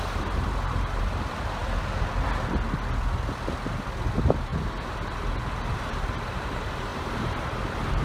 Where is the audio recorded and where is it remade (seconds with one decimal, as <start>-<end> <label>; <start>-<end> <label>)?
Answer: 0.0-1.6 remade; 1.6-4.1 recorded; 4.1-4.5 remade; 4.5-5.7 recorded; 5.7-8.0 remade

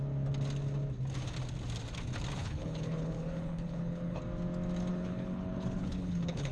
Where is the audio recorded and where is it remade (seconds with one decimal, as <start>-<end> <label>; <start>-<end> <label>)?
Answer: 0.0-2.4 recorded; 2.4-4.2 remade; 4.2-4.9 recorded; 4.9-6.5 remade

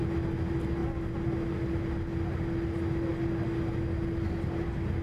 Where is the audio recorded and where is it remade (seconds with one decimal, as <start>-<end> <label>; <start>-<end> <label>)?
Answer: 0.0-5.0 recorded

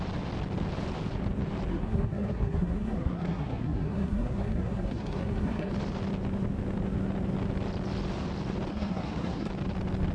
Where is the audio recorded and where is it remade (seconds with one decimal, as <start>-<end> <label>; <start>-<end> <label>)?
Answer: 0.0-1.7 recorded; 1.7-5.7 remade; 5.7-8.7 recorded; 8.7-9.5 remade; 9.5-10.1 recorded

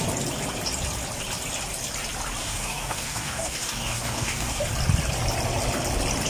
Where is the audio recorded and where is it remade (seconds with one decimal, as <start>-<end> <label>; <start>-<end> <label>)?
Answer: 0.0-2.4 recorded; 2.4-4.6 remade; 4.6-6.3 recorded

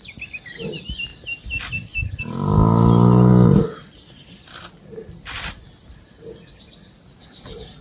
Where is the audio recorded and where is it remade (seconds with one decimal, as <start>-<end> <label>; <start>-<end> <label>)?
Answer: 0.0-7.8 recorded